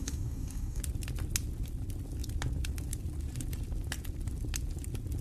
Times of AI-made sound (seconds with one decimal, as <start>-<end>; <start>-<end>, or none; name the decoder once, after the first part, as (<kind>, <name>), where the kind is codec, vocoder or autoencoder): 0.0-0.8 (codec, DAC)